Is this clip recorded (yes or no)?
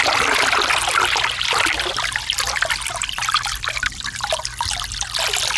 yes